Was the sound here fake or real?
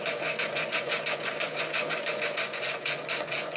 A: fake